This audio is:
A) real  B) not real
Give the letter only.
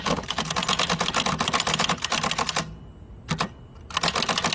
A